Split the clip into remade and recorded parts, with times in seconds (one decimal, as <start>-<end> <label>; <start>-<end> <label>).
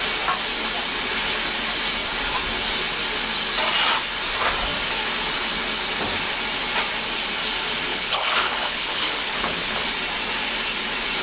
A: 0.0-7.9 recorded; 7.9-9.9 remade; 9.9-11.2 recorded